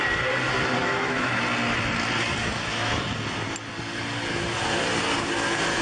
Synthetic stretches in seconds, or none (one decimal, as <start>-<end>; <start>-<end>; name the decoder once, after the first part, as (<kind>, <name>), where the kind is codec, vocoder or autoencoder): 0.8-1.4 (autoencoder, DAC-VAE); 2.4-3.0